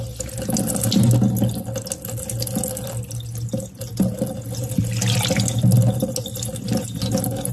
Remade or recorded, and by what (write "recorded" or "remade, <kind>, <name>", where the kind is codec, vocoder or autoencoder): recorded